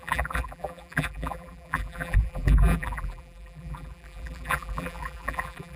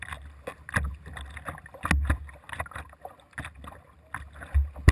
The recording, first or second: second